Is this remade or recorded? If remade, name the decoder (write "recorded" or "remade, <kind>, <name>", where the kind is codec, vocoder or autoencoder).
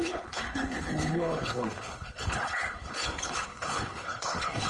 remade, codec, HILCodec